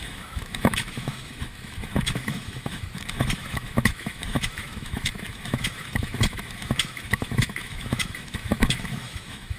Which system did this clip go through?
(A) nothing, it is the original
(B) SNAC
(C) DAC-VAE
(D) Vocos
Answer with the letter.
C